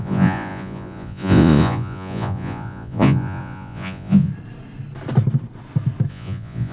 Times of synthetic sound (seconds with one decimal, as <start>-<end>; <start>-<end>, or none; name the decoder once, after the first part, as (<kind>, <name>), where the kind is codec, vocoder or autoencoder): 0.0-4.3 (vocoder, Vocos); 6.1-6.7